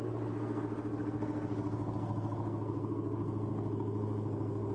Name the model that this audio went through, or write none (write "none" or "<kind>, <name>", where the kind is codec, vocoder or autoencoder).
codec, SNAC